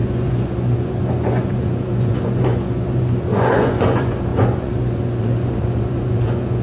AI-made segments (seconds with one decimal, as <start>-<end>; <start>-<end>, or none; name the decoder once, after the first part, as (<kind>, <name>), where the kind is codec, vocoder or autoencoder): 0.0-6.6 (vocoder, Vocos)